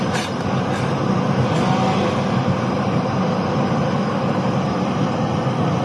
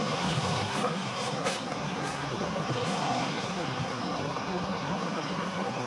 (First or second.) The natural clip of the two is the first